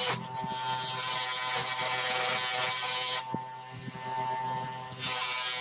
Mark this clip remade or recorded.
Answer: recorded